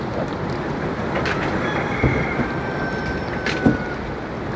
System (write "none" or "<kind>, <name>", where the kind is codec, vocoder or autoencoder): none